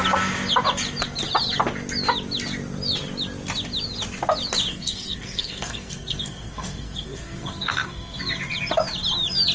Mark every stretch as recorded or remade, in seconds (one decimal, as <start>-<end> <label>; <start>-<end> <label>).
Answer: 0.0-4.7 recorded; 4.7-8.2 remade; 8.2-9.5 recorded